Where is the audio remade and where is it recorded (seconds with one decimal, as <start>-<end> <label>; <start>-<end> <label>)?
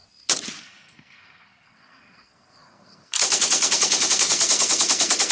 0.0-0.6 recorded; 0.6-5.3 remade